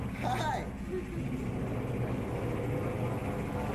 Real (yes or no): yes